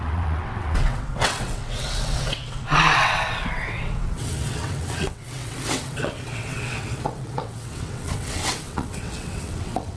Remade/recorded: remade